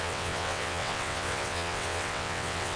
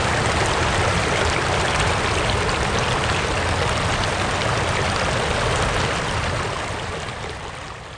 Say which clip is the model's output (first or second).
first